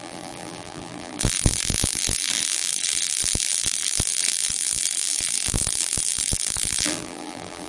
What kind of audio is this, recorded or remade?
remade